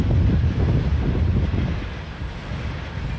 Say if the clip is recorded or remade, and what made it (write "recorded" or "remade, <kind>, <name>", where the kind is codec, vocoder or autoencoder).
recorded